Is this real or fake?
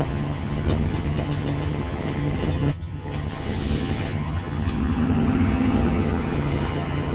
fake